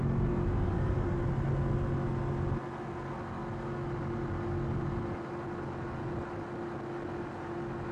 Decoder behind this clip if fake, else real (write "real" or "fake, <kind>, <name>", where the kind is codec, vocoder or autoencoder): real